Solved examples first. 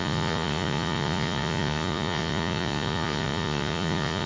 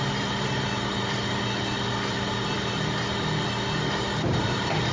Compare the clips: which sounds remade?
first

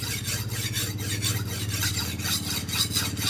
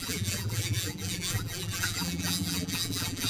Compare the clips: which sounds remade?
second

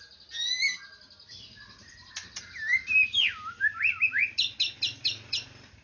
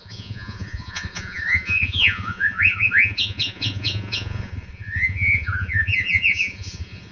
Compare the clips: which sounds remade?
second